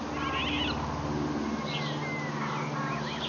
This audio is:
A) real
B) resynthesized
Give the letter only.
A